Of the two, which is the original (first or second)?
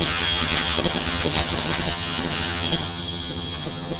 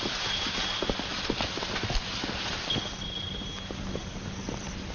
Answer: second